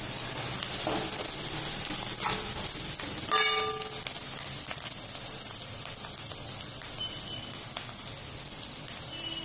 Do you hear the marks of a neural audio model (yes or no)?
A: no